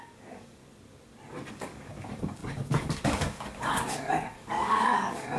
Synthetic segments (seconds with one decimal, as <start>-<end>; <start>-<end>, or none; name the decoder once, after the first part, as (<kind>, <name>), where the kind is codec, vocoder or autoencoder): 0.0-0.6 (codec, DAC); 1.5-5.4